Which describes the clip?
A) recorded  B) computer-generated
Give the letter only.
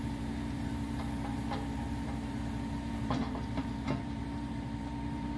B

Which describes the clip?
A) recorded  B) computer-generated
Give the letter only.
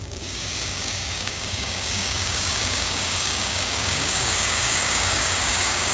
B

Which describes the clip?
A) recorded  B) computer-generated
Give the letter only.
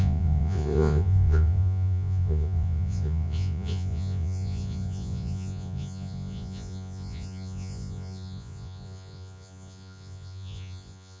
B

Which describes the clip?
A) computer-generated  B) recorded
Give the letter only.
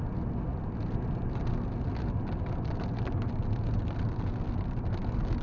B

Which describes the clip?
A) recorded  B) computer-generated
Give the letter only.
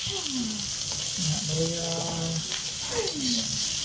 A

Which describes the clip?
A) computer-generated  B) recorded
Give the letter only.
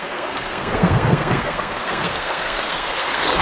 A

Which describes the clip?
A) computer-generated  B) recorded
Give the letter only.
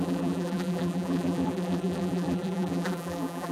A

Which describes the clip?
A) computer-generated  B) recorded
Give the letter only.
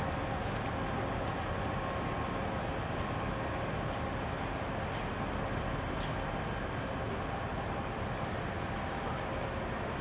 B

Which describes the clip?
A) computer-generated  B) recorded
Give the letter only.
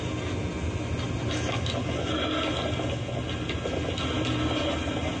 B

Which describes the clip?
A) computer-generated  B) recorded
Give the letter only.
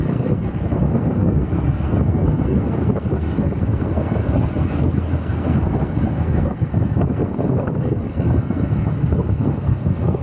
A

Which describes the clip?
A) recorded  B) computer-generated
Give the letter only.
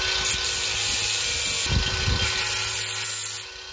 A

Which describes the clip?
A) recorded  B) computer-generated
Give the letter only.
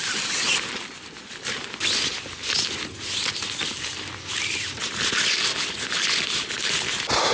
A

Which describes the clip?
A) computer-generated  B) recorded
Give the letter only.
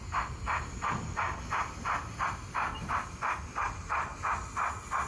B